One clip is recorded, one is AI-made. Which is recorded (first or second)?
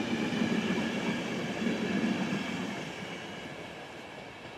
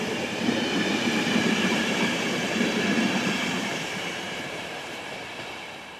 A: first